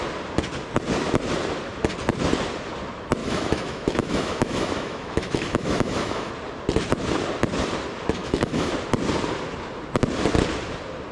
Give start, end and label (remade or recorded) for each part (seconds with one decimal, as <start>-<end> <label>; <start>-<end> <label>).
0.0-3.2 recorded; 3.2-6.3 remade; 6.3-8.2 recorded; 8.2-8.7 remade; 8.7-11.1 recorded

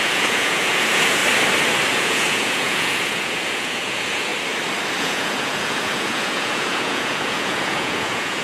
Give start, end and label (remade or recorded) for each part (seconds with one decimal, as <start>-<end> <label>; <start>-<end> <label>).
0.0-1.2 remade; 1.2-1.9 recorded; 1.9-4.3 remade; 4.3-5.0 recorded; 5.0-8.4 remade

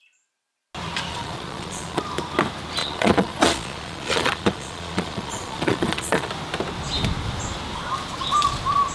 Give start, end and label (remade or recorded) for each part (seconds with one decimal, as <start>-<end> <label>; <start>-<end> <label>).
0.0-1.1 recorded; 1.1-2.0 remade; 2.0-2.8 recorded; 2.8-6.3 remade; 6.3-8.9 recorded

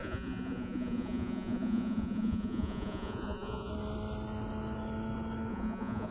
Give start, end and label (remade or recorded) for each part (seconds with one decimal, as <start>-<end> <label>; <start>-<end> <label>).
0.0-3.7 remade; 3.7-5.5 recorded; 5.5-6.1 remade